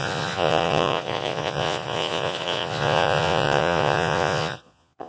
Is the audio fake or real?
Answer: fake